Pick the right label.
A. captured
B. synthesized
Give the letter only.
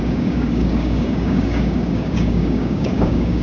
B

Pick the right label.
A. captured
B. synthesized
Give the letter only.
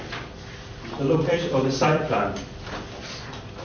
B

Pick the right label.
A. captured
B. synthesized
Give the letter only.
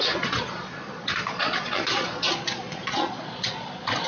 B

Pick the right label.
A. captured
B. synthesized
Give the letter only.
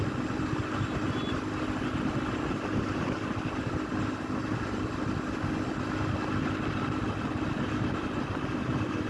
A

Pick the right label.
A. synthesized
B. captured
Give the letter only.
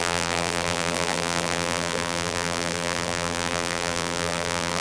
A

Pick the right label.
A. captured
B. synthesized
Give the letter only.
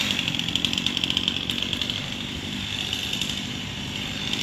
B